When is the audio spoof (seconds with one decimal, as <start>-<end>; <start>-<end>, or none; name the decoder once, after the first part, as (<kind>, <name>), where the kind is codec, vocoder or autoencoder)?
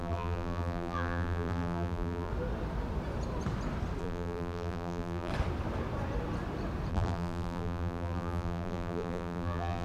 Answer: 0.0-2.3 (vocoder, BigVGAN v2); 4.0-5.3; 6.9-9.8